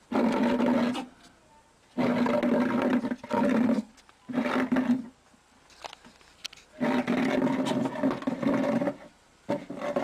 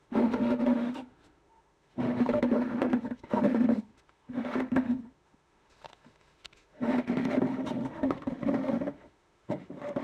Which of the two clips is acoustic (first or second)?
first